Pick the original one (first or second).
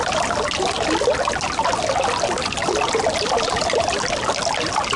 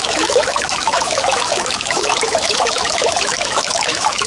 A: first